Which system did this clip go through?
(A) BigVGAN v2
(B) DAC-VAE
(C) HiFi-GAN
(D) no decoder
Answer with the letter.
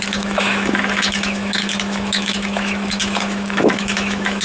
B